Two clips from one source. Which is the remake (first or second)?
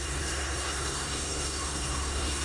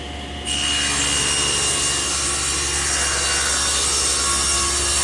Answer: first